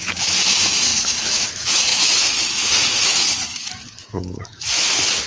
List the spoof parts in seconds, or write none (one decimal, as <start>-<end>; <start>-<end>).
0.0-5.3